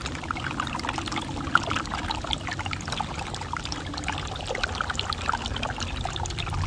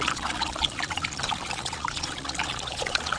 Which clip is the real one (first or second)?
first